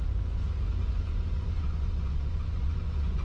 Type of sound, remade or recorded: remade